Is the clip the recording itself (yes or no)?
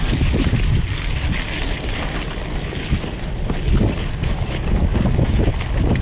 yes